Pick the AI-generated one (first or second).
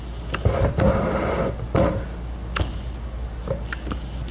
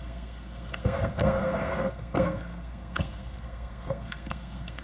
second